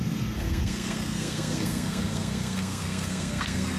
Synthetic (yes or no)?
yes